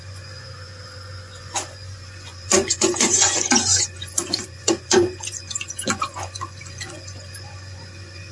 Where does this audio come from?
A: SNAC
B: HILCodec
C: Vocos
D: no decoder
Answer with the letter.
C